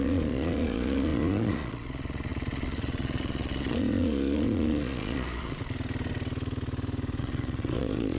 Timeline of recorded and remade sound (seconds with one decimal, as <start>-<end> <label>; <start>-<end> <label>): 0.0-5.6 remade; 5.6-7.2 recorded; 7.2-8.2 remade